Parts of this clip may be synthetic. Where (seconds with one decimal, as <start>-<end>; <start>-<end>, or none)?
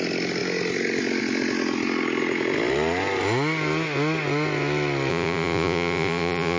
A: 5.1-6.6